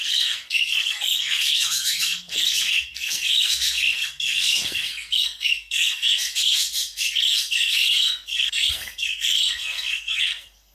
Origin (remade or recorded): remade